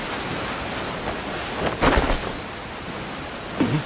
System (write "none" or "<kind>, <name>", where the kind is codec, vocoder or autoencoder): none